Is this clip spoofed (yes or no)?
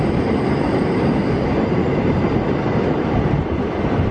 yes